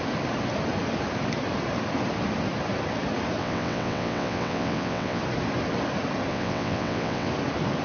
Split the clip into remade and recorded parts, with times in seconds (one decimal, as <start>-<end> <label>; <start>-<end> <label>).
0.0-3.4 recorded; 3.4-5.2 remade; 5.2-6.3 recorded; 6.3-7.3 remade; 7.3-7.8 recorded